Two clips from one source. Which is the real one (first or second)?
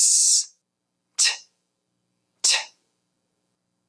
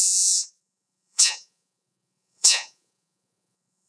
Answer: first